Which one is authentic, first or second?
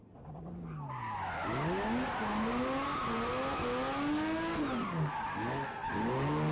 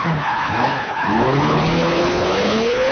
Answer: first